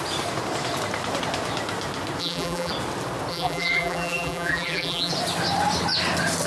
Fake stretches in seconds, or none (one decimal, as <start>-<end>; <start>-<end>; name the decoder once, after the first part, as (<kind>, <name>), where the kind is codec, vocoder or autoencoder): 2.2-2.7 (vocoder, BigVGAN v2); 3.3-5.1